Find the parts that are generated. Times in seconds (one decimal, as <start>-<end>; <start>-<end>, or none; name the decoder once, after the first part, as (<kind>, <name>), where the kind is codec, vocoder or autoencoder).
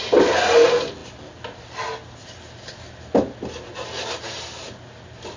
none